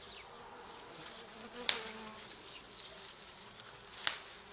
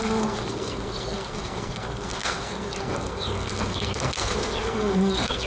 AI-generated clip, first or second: second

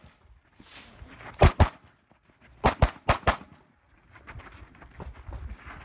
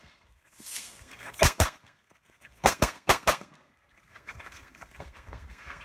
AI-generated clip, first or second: second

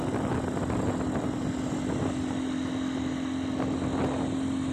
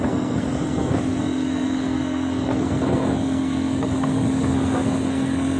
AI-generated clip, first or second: second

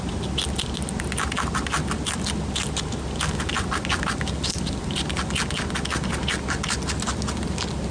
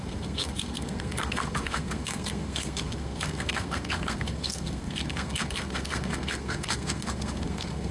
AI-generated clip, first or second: second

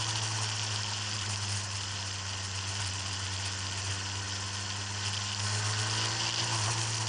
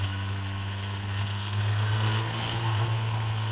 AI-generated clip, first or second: second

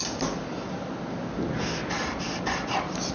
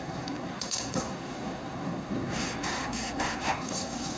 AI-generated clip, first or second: second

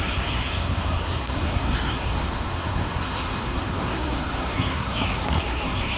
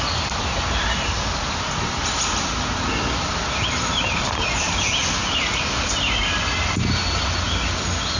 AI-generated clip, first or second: first